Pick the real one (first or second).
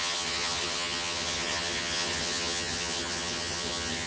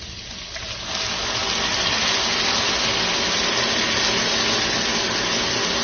second